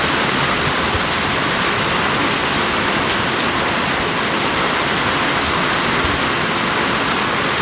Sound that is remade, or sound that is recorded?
recorded